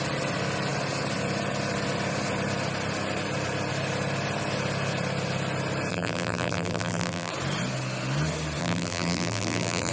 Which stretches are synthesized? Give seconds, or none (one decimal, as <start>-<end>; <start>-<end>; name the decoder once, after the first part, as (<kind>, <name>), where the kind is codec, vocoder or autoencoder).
5.9-7.3 (vocoder, BigVGAN v2); 8.6-9.9